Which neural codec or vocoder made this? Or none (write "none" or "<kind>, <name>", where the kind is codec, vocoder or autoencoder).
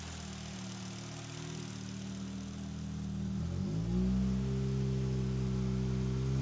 none